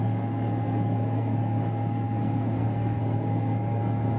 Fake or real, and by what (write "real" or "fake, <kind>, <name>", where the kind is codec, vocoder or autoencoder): fake, codec, SNAC